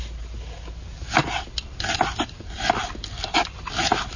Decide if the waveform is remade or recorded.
recorded